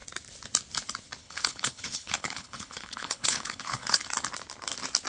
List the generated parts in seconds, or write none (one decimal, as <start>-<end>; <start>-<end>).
1.2-4.0